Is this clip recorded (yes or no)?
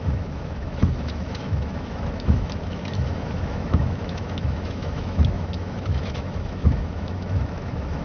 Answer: no